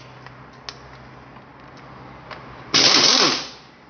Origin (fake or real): real